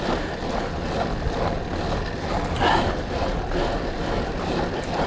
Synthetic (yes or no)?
no